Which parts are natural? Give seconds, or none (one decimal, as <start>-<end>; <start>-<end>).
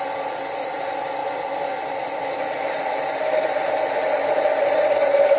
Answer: 0.0-5.4